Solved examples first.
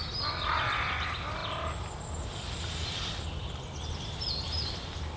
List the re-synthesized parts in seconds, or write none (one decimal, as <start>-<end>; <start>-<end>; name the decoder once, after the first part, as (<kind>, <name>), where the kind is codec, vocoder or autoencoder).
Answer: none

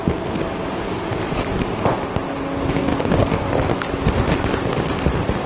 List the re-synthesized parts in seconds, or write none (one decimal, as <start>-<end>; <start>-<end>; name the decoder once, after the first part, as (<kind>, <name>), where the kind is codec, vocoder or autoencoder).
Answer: none

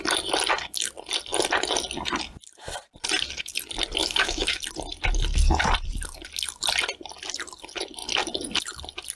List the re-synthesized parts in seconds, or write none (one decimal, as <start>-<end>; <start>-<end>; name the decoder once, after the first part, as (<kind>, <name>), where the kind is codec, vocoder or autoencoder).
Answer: 4.0-4.6 (autoencoder, DAC-VAE)